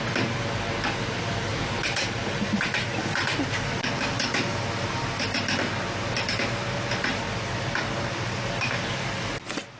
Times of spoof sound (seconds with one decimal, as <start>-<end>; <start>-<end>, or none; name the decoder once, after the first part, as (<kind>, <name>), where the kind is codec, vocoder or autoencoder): 1.5-2.2 (vocoder, BigVGAN v2); 4.5-5.1

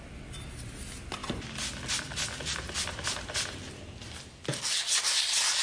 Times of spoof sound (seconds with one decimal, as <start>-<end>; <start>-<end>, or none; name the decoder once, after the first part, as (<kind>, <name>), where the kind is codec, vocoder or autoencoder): none

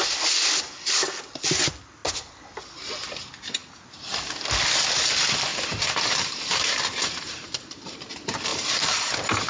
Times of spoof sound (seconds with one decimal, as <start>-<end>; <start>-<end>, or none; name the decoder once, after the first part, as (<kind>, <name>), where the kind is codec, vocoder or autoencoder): 5.5-8.1 (vocoder, BigVGAN v2); 8.5-9.1

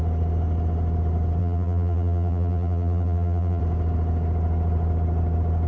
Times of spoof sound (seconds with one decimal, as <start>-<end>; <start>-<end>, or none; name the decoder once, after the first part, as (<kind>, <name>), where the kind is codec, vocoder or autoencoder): 1.4-3.6 (vocoder, BigVGAN v2)